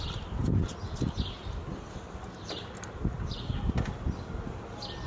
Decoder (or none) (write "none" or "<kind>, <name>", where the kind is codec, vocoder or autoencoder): none